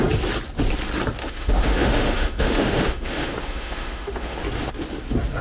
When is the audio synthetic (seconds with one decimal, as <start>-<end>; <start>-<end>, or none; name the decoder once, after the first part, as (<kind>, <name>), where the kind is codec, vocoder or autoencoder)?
1.2-4.4 (autoencoder, DAC-VAE)